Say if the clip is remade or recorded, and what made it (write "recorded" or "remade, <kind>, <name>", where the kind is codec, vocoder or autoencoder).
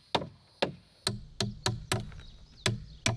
recorded